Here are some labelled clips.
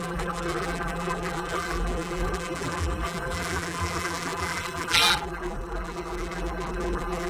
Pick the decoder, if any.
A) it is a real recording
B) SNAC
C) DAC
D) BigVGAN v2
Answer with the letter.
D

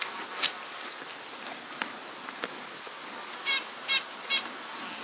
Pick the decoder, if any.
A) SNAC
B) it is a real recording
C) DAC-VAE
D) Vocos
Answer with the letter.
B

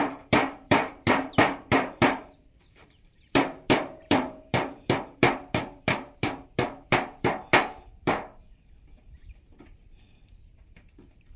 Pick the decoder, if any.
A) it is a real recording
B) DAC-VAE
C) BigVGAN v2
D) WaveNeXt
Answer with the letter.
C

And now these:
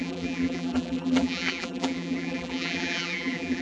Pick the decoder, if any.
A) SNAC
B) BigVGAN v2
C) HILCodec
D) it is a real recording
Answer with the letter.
B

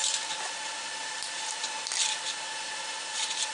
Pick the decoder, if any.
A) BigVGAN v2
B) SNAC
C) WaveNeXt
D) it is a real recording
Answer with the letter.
D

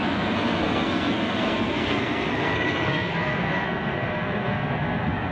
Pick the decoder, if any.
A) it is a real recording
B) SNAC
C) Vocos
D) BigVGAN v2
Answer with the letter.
B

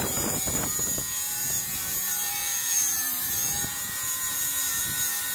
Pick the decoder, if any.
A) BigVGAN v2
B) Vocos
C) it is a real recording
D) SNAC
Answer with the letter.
A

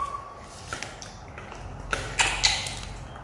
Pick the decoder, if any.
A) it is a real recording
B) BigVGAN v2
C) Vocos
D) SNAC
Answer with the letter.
A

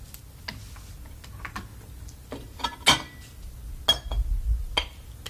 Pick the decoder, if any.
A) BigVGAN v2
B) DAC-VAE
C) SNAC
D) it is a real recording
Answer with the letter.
D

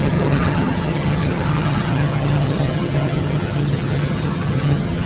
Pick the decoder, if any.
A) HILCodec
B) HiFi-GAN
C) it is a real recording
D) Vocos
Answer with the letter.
B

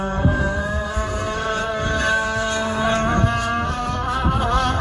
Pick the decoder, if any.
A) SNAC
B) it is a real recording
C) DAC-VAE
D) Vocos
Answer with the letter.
A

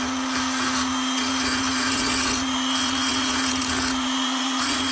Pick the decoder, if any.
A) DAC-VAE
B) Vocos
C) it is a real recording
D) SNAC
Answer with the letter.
B